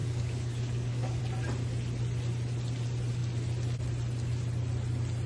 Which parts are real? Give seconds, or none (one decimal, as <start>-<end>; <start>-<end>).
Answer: 1.2-5.3